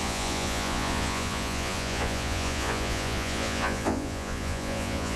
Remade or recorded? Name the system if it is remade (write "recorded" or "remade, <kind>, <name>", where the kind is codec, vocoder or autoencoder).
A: remade, vocoder, Vocos